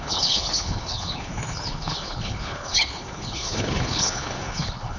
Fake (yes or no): yes